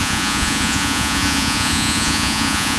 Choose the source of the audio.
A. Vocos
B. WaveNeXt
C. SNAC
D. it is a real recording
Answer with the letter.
A